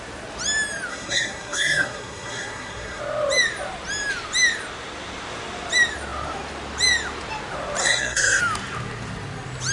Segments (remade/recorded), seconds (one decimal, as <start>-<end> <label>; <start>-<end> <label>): 0.0-0.9 recorded; 0.9-3.0 remade; 3.0-7.8 recorded; 7.8-8.4 remade; 8.4-9.7 recorded